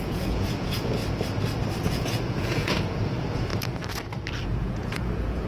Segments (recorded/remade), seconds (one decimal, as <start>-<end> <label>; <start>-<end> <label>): 0.0-1.0 remade; 1.0-1.8 recorded; 1.8-3.5 remade; 3.5-4.4 recorded; 4.4-5.5 remade

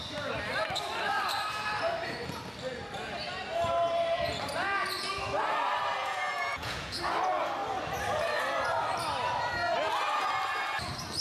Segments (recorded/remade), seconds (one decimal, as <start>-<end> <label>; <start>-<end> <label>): 0.0-6.0 recorded; 6.0-7.0 remade; 7.0-11.2 recorded

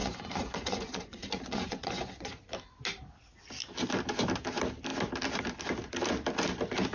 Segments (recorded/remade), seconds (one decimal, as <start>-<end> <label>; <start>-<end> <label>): 0.0-2.3 remade; 2.3-6.9 recorded

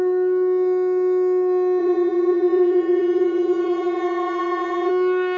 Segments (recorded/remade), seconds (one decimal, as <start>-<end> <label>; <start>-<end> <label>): 0.0-1.8 recorded; 1.8-4.9 remade; 4.9-5.4 recorded

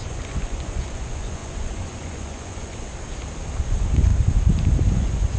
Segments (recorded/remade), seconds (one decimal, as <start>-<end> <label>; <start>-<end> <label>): 0.0-2.9 remade; 2.9-3.6 recorded; 3.6-4.1 remade; 4.1-4.9 recorded; 4.9-5.4 remade

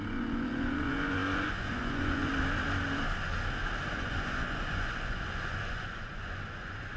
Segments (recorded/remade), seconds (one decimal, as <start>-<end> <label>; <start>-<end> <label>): 0.0-2.3 remade; 2.3-3.9 recorded; 3.9-7.0 remade

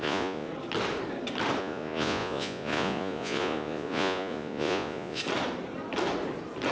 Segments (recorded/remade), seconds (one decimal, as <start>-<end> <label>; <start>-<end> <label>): 0.0-0.5 remade; 0.5-1.6 recorded; 1.6-5.2 remade; 5.2-6.7 recorded